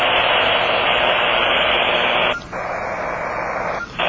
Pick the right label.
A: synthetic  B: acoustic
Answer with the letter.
B